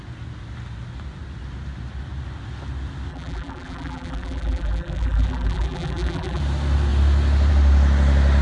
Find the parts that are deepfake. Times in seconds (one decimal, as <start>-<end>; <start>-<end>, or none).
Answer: 3.1-6.4